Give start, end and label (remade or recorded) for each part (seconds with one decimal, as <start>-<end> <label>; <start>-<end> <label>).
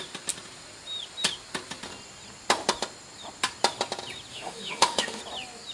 0.0-4.3 recorded; 4.3-5.2 remade; 5.2-5.7 recorded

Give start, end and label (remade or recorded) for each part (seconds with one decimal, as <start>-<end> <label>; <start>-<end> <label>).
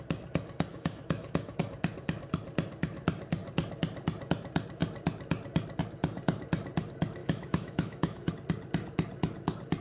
0.0-0.7 recorded; 0.7-1.6 remade; 1.6-7.2 recorded; 7.2-8.3 remade; 8.3-9.8 recorded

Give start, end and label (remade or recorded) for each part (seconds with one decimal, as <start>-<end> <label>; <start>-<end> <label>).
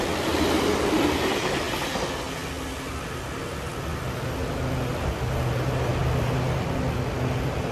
0.0-7.7 recorded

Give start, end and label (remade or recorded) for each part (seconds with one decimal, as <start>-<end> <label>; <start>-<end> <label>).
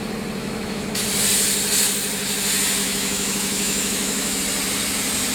0.0-0.4 recorded; 0.4-1.0 remade; 1.0-2.8 recorded; 2.8-4.4 remade; 4.4-5.3 recorded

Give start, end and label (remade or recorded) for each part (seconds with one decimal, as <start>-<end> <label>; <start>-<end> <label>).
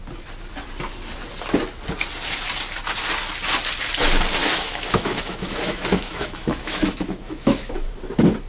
0.0-4.4 recorded; 4.4-7.9 remade; 7.9-8.5 recorded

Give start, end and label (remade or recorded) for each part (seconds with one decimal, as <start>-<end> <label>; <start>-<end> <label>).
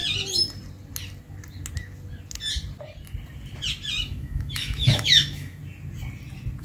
0.0-4.0 recorded; 4.0-5.6 remade; 5.6-6.6 recorded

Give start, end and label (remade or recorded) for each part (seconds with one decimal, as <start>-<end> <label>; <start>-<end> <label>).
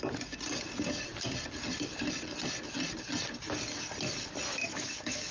0.0-4.6 recorded; 4.6-5.3 remade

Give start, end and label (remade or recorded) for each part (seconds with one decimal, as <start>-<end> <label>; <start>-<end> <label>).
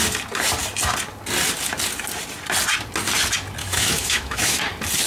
0.0-3.6 recorded; 3.6-4.6 remade; 4.6-5.1 recorded